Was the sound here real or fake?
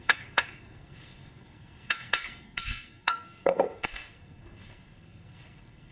fake